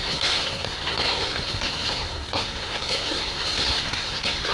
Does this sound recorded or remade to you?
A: remade